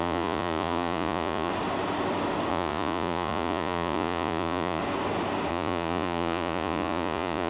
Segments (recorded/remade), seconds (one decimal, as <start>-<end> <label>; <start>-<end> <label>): 0.0-1.5 remade; 1.5-2.5 recorded; 2.5-4.8 remade; 4.8-5.5 recorded; 5.5-7.5 remade